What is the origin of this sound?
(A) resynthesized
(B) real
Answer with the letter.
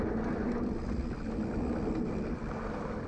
B